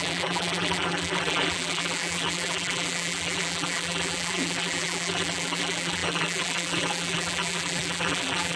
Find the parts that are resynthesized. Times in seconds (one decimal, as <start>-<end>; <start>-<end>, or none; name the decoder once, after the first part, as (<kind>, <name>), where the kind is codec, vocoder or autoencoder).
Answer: 0.0-8.6 (vocoder, BigVGAN v2)